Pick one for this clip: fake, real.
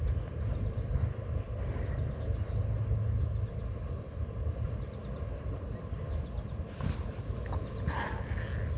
real